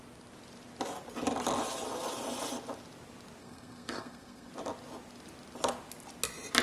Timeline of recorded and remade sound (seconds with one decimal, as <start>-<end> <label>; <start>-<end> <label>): 0.0-3.4 recorded; 3.4-4.5 remade; 4.5-6.6 recorded